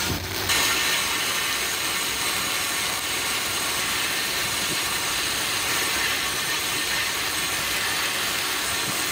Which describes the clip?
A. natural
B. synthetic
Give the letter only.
A